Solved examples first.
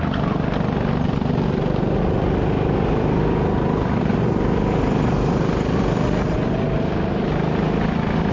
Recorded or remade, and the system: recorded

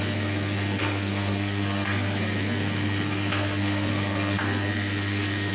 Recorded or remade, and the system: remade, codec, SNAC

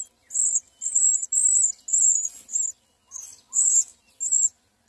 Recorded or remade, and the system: recorded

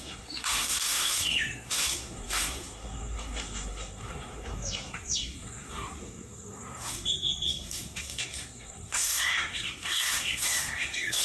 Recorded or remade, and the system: remade, codec, SNAC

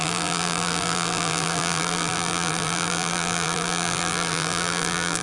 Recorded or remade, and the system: remade, vocoder, BigVGAN v2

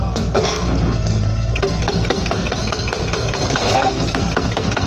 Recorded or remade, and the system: remade, codec, SNAC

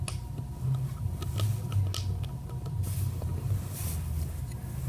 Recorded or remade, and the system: recorded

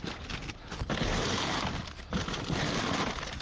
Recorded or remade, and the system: recorded